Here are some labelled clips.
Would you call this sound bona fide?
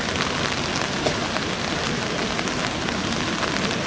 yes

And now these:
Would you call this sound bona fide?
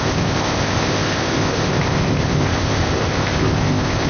no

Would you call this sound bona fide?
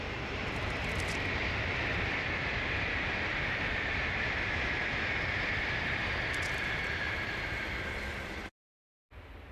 no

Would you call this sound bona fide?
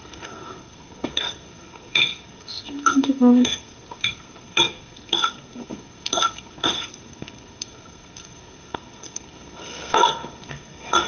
no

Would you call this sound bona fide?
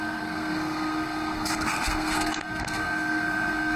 no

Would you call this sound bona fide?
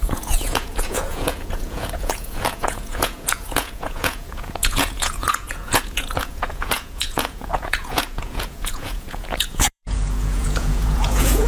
no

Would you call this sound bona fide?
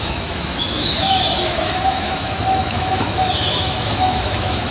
no